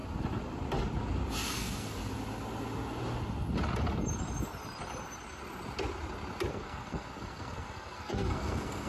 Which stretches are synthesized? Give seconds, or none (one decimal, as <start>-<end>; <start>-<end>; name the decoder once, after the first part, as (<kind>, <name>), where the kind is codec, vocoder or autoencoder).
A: 1.5-2.0 (codec, SNAC); 6.5-8.9